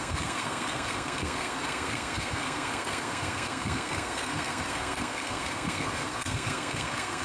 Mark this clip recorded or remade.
remade